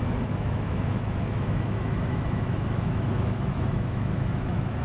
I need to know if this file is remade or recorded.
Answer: remade